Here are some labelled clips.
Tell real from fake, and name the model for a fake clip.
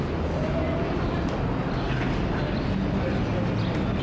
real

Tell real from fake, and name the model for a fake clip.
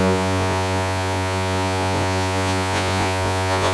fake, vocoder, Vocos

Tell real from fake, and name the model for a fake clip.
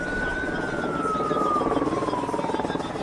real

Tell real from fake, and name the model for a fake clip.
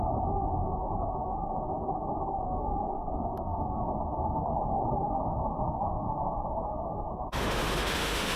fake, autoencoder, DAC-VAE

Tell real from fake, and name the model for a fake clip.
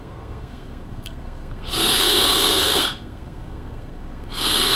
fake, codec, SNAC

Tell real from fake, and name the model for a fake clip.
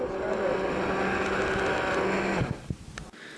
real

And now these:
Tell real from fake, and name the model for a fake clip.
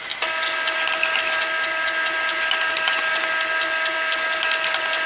real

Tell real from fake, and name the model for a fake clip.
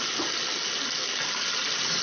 real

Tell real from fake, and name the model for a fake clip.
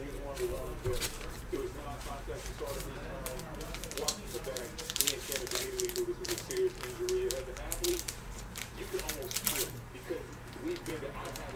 fake, vocoder, BigVGAN v2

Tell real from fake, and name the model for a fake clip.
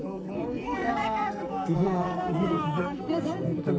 fake, codec, SNAC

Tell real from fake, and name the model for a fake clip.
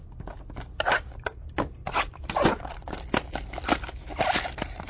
fake, vocoder, BigVGAN v2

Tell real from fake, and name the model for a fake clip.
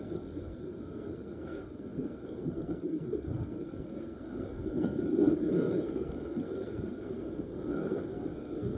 fake, codec, SNAC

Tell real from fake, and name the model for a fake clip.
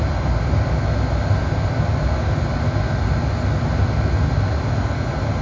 real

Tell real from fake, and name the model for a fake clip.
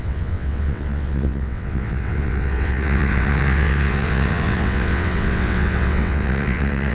fake, vocoder, WaveNeXt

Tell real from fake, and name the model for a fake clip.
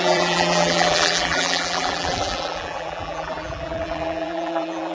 fake, vocoder, BigVGAN v2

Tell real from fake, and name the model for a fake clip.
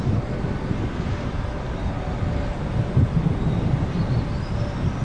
real